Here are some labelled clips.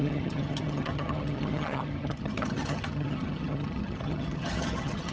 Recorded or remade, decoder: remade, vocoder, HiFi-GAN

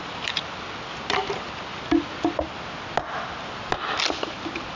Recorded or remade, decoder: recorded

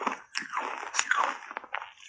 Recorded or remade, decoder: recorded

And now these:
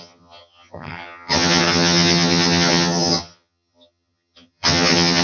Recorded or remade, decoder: remade, vocoder, HiFi-GAN